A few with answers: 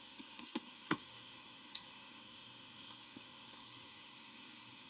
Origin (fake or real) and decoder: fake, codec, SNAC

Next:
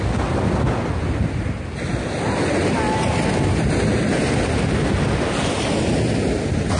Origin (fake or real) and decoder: real